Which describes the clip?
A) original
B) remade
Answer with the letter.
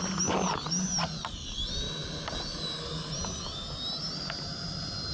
A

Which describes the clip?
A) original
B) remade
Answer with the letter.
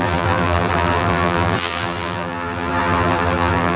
B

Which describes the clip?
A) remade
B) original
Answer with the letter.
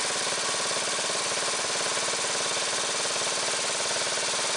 B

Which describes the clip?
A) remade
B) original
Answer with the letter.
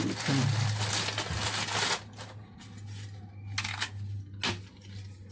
B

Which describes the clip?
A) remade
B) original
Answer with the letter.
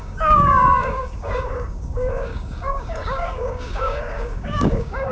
A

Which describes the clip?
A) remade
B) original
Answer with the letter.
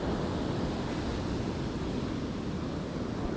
B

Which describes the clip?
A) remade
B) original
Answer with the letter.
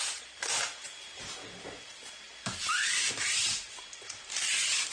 B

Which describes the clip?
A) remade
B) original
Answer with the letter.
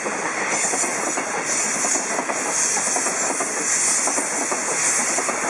B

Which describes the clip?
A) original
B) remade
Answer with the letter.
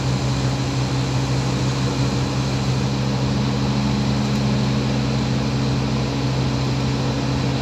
A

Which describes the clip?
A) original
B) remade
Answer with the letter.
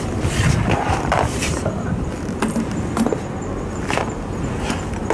A